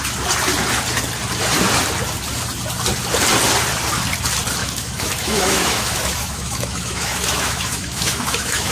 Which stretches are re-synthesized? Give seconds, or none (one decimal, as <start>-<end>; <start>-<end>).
4.6-8.7

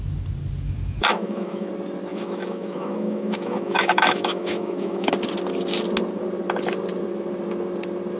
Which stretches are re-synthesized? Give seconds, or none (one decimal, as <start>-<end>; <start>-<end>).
1.0-1.7; 2.1-5.1

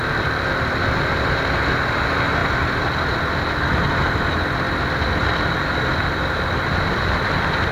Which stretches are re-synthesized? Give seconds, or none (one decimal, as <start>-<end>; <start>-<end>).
none

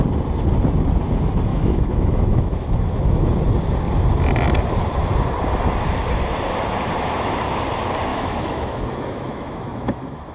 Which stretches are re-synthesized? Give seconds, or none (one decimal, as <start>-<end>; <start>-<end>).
1.5-3.3; 8.1-10.3

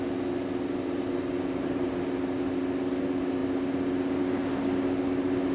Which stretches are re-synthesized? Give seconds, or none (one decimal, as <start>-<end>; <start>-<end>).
none

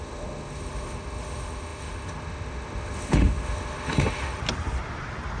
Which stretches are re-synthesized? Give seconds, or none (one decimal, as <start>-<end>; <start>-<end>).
0.0-4.4

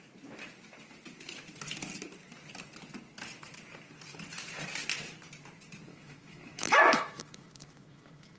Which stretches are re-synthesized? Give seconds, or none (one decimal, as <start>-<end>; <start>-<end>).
5.9-8.4

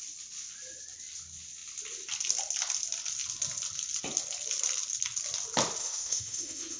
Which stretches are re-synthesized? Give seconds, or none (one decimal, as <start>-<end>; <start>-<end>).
5.8-6.8